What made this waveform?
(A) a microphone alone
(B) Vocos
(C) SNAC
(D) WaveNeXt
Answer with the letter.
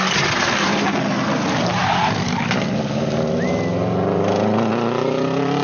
A